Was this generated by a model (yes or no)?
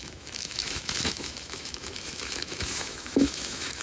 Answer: yes